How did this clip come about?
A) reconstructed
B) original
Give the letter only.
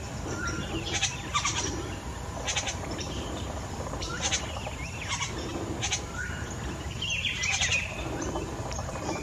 B